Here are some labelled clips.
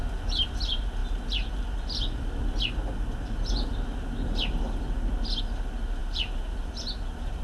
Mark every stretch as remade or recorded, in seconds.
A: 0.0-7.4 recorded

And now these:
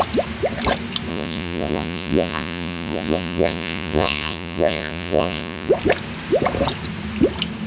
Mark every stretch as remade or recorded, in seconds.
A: 0.0-1.1 recorded; 1.1-5.7 remade; 5.7-7.7 recorded

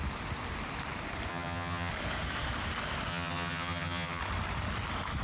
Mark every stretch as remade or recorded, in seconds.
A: 0.0-1.3 recorded; 1.3-1.9 remade; 1.9-3.1 recorded; 3.1-4.2 remade; 4.2-5.2 recorded

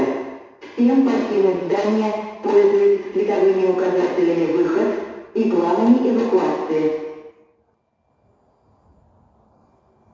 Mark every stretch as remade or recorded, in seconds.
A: 0.0-1.2 recorded; 1.2-3.2 remade; 3.2-10.1 recorded

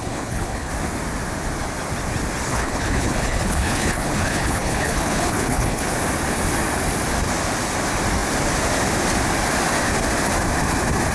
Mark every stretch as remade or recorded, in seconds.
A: 0.0-0.7 remade; 0.7-2.5 recorded; 2.5-5.9 remade; 5.9-11.1 recorded

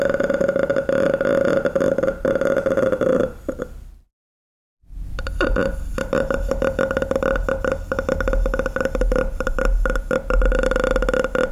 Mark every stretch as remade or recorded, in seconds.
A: 0.0-3.1 recorded; 3.1-6.5 remade; 6.5-11.5 recorded

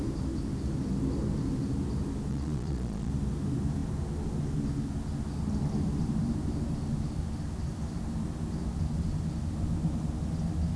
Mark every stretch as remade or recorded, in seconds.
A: 0.0-2.3 recorded; 2.3-3.1 remade; 3.1-10.8 recorded

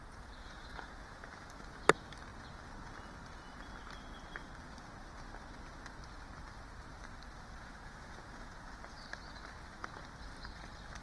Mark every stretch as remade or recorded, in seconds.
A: 0.0-1.3 remade; 1.3-7.6 recorded; 7.6-8.7 remade; 8.7-11.0 recorded